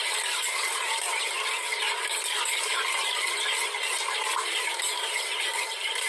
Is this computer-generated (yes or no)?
yes